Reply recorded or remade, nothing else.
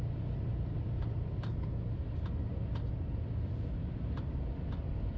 remade